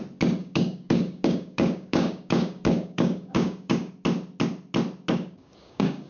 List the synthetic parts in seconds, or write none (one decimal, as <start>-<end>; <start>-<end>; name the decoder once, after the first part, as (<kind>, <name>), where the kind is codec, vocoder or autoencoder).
0.4-3.9 (codec, DAC); 5.1-6.1